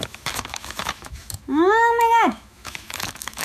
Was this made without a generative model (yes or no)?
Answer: no